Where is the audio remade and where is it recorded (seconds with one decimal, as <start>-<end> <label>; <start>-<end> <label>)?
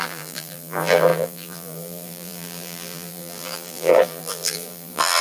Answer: 0.0-5.2 remade